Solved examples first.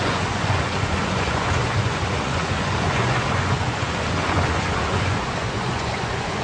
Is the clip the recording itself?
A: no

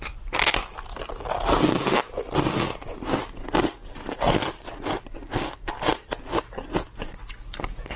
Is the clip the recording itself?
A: yes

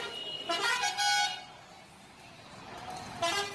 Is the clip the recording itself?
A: yes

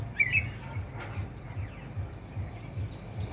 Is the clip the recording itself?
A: yes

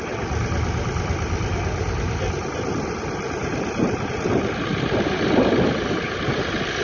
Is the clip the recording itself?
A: yes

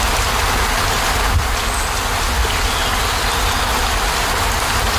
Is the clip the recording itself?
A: yes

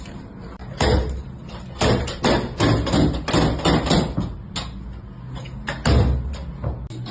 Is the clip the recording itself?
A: yes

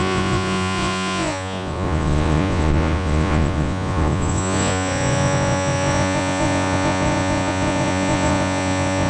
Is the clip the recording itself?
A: no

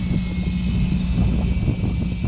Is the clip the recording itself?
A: yes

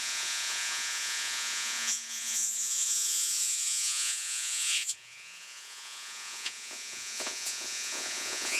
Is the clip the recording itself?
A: no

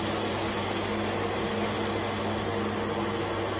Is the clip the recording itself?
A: yes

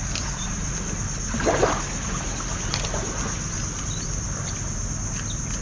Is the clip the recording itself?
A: yes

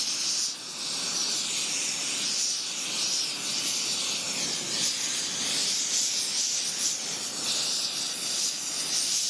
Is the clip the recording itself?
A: yes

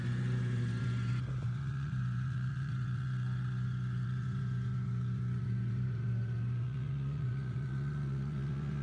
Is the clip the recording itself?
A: no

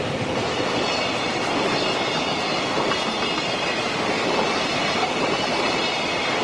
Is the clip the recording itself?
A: yes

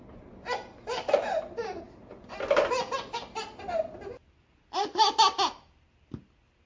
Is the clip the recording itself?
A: yes